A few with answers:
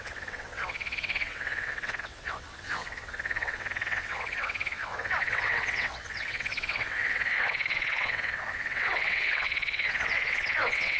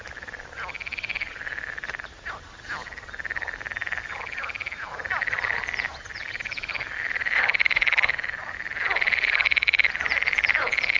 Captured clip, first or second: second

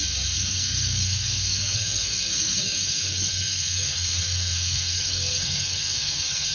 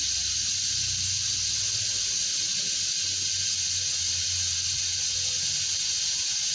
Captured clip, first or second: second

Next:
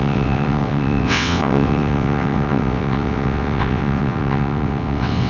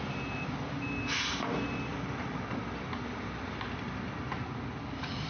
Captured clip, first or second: second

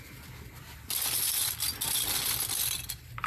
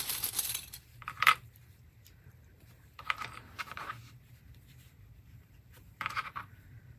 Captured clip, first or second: first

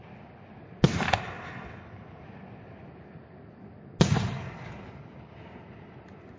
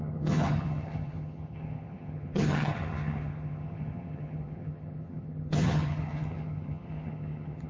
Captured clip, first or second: first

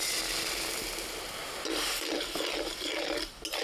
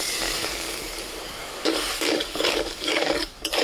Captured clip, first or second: first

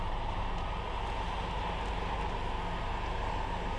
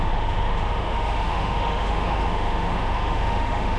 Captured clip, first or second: first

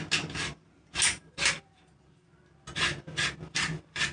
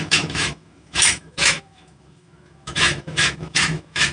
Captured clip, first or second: first